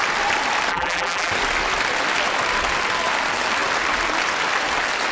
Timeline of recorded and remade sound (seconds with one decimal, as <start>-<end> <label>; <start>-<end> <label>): 0.0-0.7 recorded; 0.7-1.3 remade; 1.3-5.1 recorded

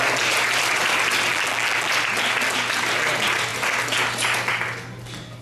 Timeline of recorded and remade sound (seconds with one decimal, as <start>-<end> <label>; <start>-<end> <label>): 0.0-1.3 recorded; 1.3-1.9 remade; 1.9-5.4 recorded

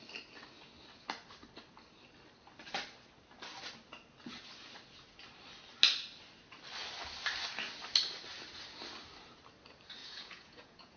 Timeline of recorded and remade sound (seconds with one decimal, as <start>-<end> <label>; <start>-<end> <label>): 0.0-10.0 recorded; 10.0-11.0 remade

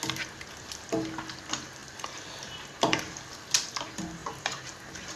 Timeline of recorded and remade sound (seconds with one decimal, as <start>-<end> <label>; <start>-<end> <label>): 0.0-4.2 recorded; 4.2-4.8 remade; 4.8-5.2 recorded

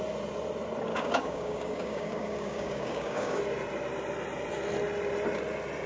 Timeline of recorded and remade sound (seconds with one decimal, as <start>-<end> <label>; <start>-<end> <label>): 0.0-0.9 recorded; 0.9-3.4 remade; 3.4-5.9 recorded

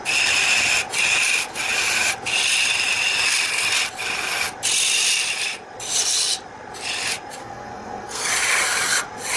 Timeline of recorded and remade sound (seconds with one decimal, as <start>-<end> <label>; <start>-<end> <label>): 0.0-7.4 recorded; 7.4-8.3 remade; 8.3-9.4 recorded

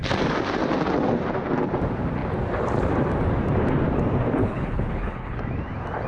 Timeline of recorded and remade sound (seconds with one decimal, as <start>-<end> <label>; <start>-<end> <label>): 0.0-4.4 recorded; 4.4-5.4 remade; 5.4-6.1 recorded

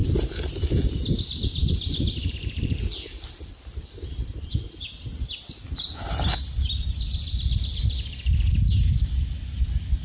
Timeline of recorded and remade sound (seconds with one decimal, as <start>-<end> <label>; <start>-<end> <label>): 0.0-10.0 recorded